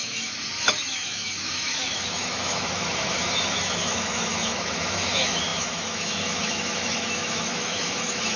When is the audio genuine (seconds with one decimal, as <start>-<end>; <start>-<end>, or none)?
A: none